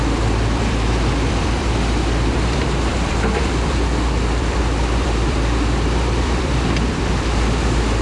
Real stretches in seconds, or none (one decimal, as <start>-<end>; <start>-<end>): none